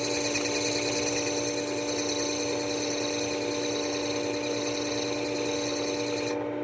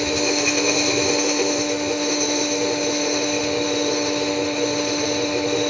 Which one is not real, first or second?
second